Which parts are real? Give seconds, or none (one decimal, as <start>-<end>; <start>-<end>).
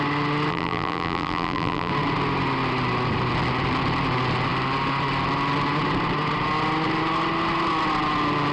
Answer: 0.0-0.5; 1.9-8.5